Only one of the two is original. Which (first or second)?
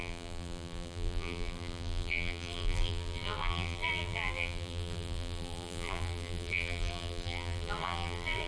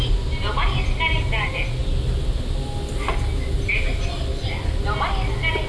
second